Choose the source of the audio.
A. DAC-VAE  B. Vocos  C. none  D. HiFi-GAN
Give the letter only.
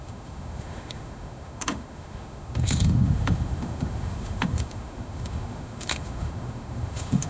A